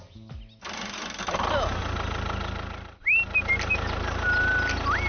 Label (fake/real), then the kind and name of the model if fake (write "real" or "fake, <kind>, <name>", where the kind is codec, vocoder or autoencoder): real